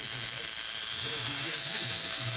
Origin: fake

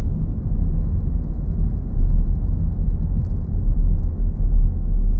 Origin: real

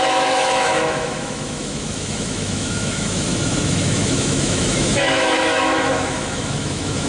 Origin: fake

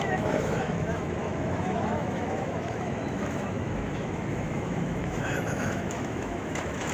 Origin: fake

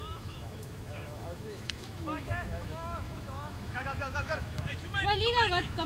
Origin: fake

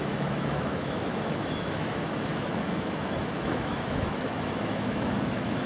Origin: fake